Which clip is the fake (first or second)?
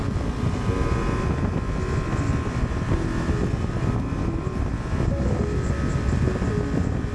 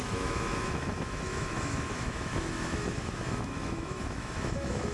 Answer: second